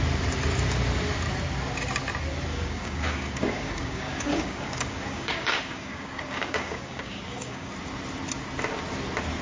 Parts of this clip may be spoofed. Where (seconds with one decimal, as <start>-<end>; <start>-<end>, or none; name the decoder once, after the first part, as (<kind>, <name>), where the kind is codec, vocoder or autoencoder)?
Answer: 2.5-7.7 (codec, DAC)